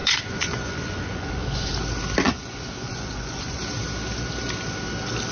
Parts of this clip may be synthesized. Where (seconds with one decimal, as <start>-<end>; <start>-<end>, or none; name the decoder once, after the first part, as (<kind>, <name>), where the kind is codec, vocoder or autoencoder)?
0.0-1.7 (vocoder, Vocos); 2.2-3.6

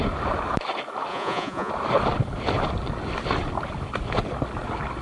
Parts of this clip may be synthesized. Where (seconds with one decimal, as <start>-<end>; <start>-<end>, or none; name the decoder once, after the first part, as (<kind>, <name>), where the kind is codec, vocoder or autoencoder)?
1.1-1.7 (vocoder, Vocos)

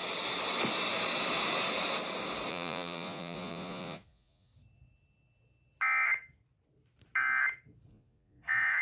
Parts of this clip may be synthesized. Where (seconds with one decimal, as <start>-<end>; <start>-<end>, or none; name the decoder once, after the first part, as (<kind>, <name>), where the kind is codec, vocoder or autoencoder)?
2.5-4.5 (vocoder, Vocos); 7.9-8.8